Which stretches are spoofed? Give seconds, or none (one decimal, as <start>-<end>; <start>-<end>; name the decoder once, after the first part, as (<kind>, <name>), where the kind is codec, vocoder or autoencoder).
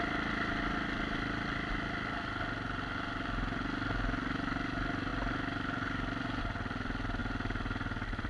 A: none